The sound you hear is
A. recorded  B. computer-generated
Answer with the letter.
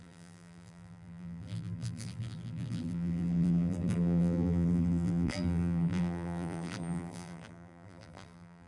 B